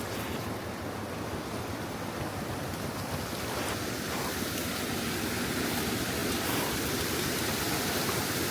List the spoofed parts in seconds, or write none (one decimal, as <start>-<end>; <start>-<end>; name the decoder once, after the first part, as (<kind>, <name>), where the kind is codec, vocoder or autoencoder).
none